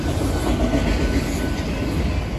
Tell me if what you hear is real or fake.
real